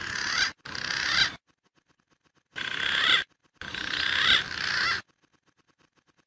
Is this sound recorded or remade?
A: recorded